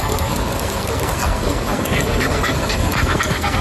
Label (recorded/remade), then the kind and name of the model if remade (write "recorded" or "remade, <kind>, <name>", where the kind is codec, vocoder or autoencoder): remade, codec, SNAC